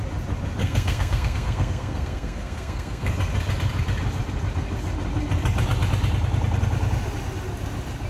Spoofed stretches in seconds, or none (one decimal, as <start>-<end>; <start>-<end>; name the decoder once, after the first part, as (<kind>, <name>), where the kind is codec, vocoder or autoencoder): 0.6-3.1 (codec, SNAC)